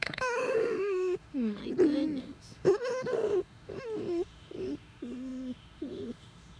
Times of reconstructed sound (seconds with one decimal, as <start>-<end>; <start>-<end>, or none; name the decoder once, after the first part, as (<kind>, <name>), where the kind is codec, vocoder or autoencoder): 0.0-1.6 (autoencoder, DAC-VAE); 2.2-6.6